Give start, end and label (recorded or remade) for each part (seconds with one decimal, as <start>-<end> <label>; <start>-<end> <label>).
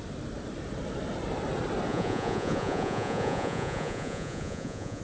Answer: 0.0-1.9 recorded; 1.9-5.0 remade